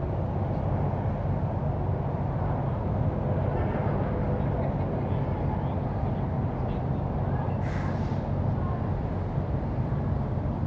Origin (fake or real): real